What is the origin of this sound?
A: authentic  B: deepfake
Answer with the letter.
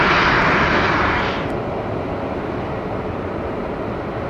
A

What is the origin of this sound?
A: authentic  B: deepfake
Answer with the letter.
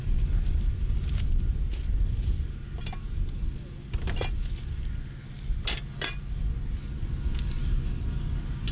A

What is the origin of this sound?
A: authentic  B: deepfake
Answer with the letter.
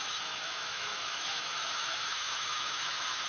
B